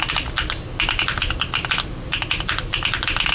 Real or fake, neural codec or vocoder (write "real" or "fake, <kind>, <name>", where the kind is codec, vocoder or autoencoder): real